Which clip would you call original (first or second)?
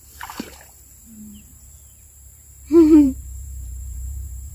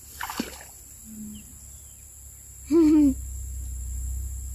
second